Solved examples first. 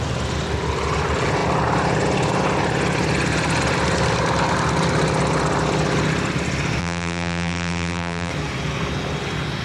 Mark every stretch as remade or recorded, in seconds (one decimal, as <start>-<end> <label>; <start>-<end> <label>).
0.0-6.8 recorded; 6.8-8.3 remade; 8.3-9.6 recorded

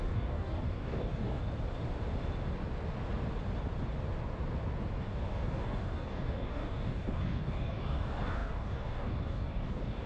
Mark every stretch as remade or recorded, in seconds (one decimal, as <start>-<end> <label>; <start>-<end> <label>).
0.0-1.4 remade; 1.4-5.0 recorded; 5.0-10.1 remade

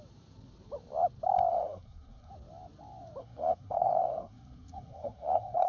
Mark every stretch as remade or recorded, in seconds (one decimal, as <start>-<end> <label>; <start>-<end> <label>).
0.0-1.5 recorded; 1.5-2.3 remade; 2.3-3.2 recorded; 3.2-5.7 remade